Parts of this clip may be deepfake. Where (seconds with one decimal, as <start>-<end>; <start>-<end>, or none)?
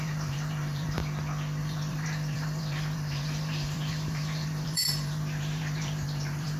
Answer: 0.0-1.0; 1.6-6.6